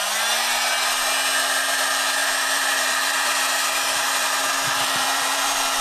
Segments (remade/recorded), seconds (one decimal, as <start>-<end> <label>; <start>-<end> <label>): 0.0-2.2 recorded; 2.2-5.8 remade